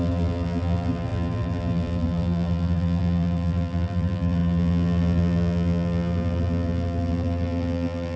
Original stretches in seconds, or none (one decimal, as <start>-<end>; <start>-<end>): none